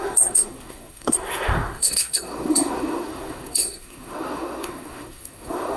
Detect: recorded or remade remade